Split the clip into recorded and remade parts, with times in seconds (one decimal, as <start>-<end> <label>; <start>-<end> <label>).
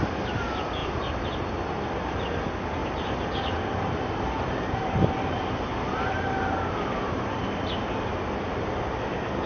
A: 0.0-0.8 recorded; 0.8-1.5 remade; 1.5-2.8 recorded; 2.8-7.5 remade; 7.5-9.5 recorded